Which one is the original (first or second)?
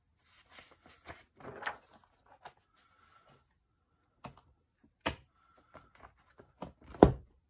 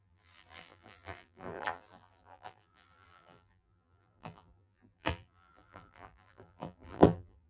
first